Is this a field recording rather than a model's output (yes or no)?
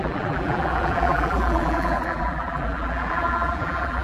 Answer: no